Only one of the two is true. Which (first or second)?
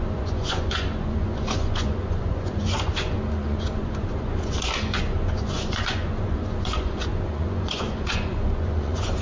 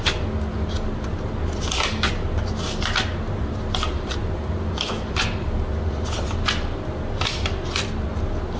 second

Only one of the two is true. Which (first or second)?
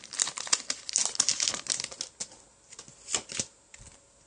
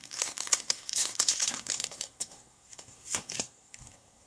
first